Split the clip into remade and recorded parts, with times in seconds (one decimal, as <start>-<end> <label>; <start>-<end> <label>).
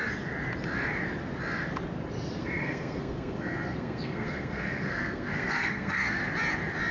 0.0-2.4 recorded; 2.4-6.2 remade; 6.2-6.9 recorded